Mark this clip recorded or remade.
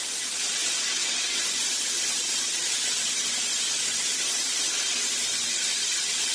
recorded